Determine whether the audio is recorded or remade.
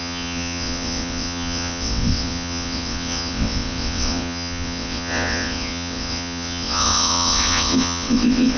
remade